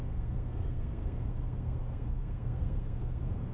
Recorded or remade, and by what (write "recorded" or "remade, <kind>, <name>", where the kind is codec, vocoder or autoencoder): remade, codec, SNAC